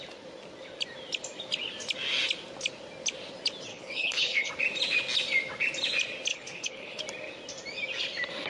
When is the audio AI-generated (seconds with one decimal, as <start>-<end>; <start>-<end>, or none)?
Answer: 3.7-4.5; 6.3-7.0